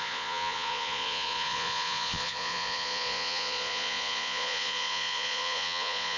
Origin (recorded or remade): remade